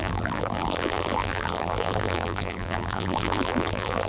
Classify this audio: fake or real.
fake